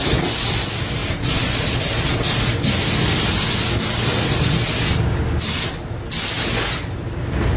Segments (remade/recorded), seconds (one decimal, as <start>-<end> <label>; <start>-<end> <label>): 0.0-7.6 recorded